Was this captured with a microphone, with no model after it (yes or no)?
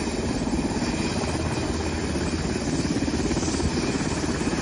yes